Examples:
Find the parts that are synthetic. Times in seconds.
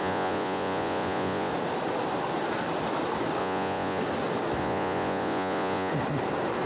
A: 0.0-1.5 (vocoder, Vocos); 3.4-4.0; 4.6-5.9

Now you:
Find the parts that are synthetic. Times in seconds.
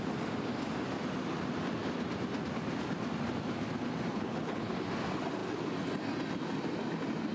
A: 4.1-4.7 (codec, HILCodec)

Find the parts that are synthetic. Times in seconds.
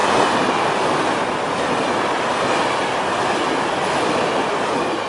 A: none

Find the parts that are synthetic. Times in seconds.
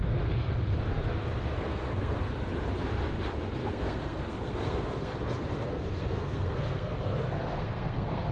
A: 0.0-2.3 (codec, SNAC); 3.6-8.3